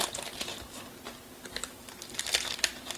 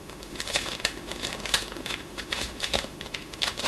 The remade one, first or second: second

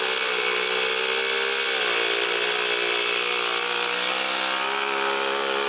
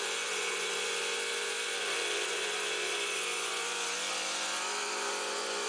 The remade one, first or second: second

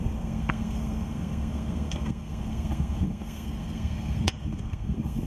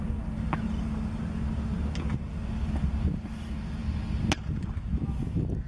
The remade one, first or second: first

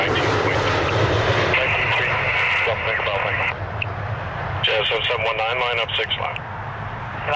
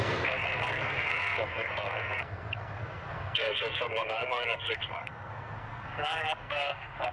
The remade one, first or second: second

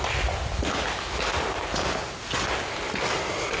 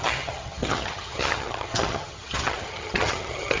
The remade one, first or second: second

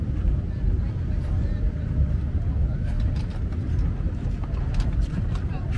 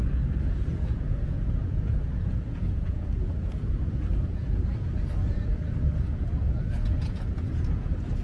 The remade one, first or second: second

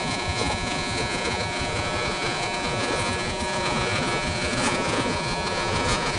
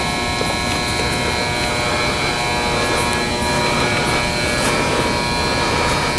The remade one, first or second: first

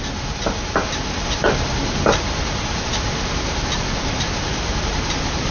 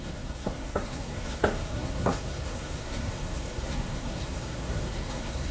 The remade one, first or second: second